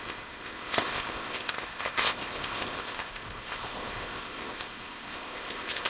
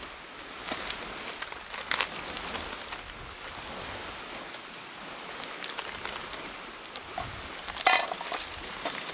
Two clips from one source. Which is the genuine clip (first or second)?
second